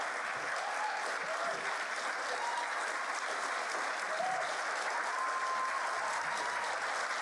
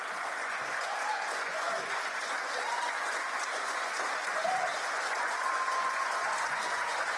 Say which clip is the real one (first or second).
first